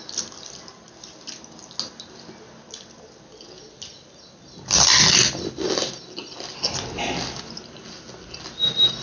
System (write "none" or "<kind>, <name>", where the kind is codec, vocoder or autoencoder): none